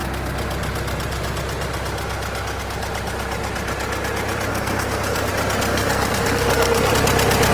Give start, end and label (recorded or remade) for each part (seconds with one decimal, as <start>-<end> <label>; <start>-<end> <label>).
0.0-4.5 recorded; 4.5-5.3 remade; 5.3-5.7 recorded; 5.7-6.9 remade; 6.9-7.5 recorded